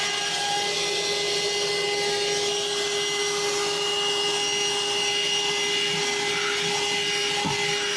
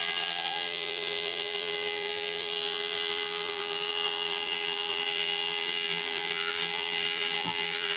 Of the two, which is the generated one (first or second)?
second